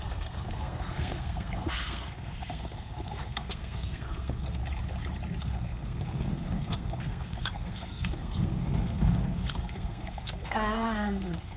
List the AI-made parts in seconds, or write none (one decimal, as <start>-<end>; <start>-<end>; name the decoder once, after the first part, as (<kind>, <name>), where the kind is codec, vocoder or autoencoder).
0.0-4.6 (codec, SNAC); 5.4-11.6